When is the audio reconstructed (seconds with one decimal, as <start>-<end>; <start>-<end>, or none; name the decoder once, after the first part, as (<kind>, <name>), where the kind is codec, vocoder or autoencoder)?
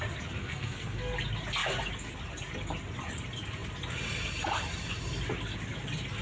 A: 0.4-1.0 (codec, SNAC)